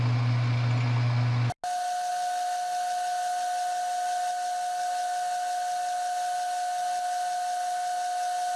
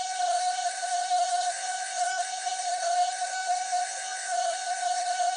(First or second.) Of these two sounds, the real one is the first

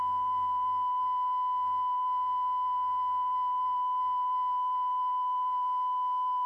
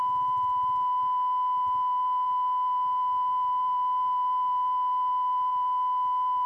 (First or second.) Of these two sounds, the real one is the second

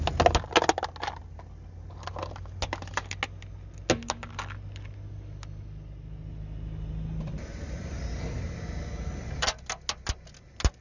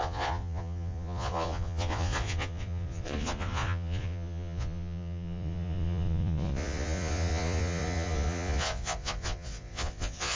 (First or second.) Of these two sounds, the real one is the first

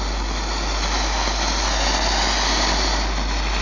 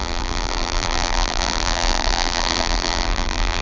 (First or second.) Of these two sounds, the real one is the first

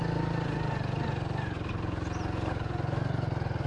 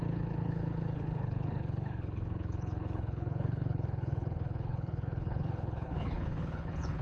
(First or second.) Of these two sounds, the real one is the first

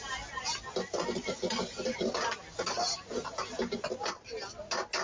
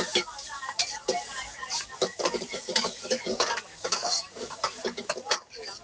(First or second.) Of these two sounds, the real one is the first